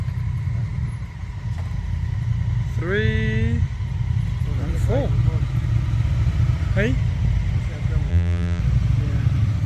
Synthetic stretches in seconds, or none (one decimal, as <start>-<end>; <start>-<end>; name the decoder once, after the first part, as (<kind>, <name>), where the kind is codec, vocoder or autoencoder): 8.1-8.6 (vocoder, BigVGAN v2)